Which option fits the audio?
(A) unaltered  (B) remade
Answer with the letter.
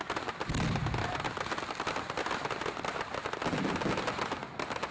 A